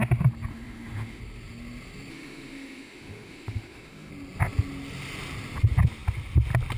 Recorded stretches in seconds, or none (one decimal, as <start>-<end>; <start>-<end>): 0.0-0.5; 1.2-2.1; 4.1-6.8